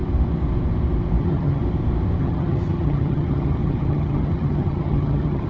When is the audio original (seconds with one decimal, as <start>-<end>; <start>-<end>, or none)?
0.0-1.2; 1.6-2.2